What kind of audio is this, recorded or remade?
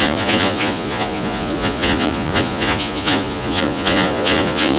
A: remade